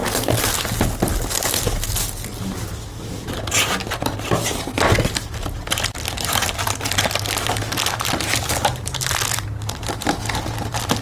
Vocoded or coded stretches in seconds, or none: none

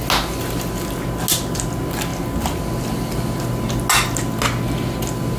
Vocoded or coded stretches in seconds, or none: none

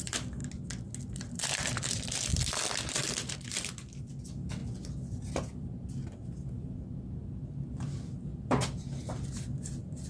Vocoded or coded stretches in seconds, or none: 0.0-0.4 (vocoder, BigVGAN v2); 1.1-4.6; 6.6-10.1